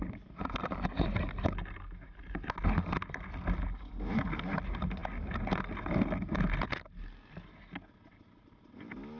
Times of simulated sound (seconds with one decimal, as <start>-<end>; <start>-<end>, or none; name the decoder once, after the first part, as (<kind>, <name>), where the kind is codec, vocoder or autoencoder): none